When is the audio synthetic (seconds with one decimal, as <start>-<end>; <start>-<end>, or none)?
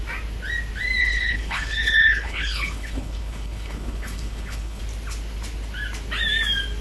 1.0-4.8